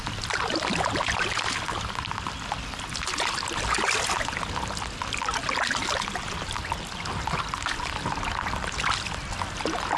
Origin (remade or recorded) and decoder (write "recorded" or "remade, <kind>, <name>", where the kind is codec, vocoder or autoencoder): recorded